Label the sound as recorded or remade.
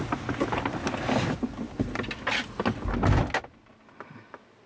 recorded